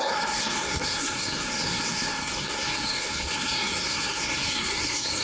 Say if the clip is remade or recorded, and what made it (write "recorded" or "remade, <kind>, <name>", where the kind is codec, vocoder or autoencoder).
remade, codec, SNAC